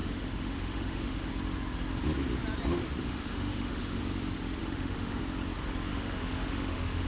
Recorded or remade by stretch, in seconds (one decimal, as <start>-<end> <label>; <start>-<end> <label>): 0.0-1.3 remade; 1.3-3.0 recorded; 3.0-4.0 remade; 4.0-4.6 recorded; 4.6-5.2 remade; 5.2-5.9 recorded; 5.9-7.1 remade